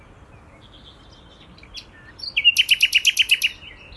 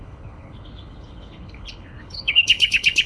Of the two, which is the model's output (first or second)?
second